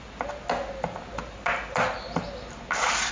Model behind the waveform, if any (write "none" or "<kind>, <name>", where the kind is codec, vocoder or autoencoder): none